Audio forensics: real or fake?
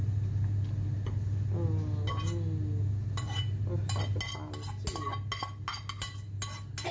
real